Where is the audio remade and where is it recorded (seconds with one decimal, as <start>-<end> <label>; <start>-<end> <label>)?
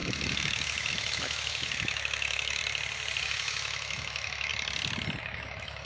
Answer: 0.0-2.6 remade; 2.6-3.2 recorded; 3.2-4.5 remade; 4.5-5.2 recorded; 5.2-5.9 remade